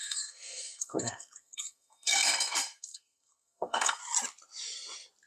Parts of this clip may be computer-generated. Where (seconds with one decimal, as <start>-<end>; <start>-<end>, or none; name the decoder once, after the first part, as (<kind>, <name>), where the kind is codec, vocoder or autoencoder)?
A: 0.0-4.0 (codec, SNAC)